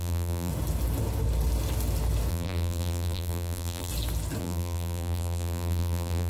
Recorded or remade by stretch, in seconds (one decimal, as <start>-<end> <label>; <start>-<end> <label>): 0.0-0.5 remade; 0.5-2.3 recorded; 2.3-3.9 remade; 3.9-4.4 recorded; 4.4-6.3 remade